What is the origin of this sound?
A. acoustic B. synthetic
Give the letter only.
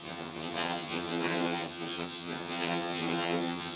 B